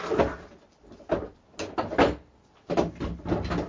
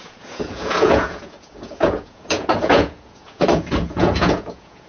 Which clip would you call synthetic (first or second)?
second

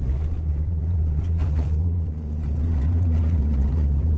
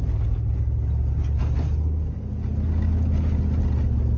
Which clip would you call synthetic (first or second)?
first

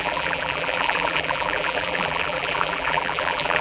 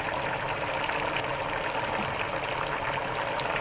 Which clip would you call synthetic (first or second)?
first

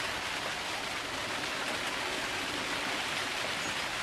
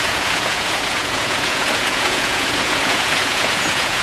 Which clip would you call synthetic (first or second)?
second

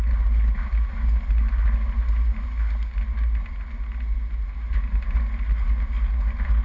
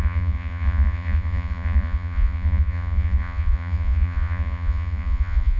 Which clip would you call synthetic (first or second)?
second